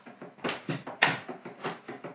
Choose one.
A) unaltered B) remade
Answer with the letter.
A